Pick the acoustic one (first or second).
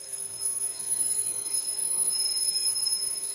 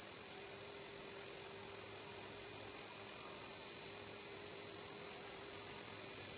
second